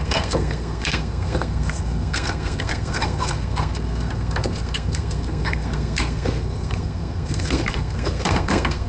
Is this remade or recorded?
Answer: remade